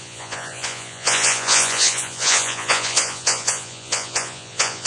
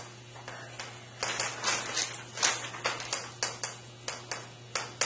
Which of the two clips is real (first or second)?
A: second